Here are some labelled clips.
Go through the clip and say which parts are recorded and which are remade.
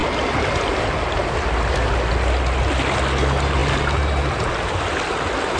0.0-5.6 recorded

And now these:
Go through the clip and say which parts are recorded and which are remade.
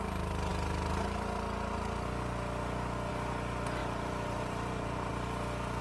0.0-3.8 recorded; 3.8-5.1 remade; 5.1-5.8 recorded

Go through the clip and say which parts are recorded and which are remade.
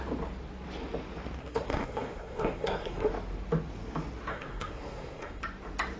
0.0-1.4 recorded; 1.4-3.1 remade; 3.1-4.3 recorded; 4.3-5.4 remade; 5.4-6.0 recorded